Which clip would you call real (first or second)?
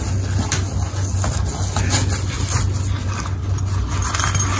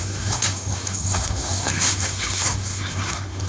first